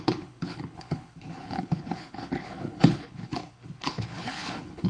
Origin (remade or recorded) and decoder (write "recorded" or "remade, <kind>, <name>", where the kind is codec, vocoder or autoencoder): remade, codec, HILCodec